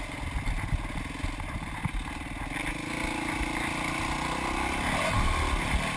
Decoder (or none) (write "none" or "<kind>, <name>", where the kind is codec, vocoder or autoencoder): none